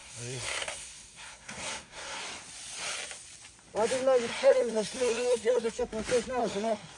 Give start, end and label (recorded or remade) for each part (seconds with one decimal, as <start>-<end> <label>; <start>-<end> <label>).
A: 0.0-2.2 remade; 2.2-4.3 recorded; 4.3-5.8 remade; 5.8-6.4 recorded; 6.4-7.0 remade